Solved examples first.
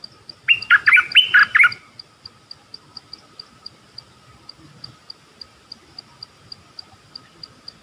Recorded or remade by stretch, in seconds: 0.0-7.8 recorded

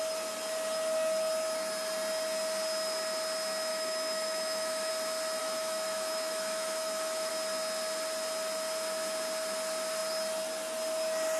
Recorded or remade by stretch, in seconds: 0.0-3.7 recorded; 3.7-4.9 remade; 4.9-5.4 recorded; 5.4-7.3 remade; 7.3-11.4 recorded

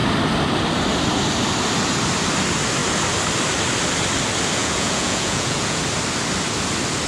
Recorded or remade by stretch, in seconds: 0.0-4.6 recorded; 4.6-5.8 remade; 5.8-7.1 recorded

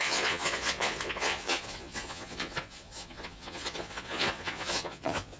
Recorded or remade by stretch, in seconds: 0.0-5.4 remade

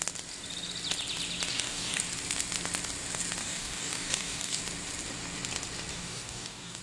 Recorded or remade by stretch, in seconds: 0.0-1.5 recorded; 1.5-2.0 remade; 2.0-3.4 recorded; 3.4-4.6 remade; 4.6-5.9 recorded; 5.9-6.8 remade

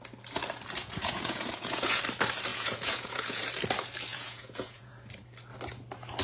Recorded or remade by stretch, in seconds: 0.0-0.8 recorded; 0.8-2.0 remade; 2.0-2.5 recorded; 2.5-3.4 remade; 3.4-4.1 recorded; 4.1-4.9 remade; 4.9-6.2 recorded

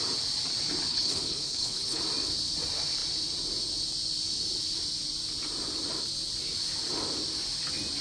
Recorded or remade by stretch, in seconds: 0.0-0.9 recorded; 0.9-2.0 remade; 2.0-8.0 recorded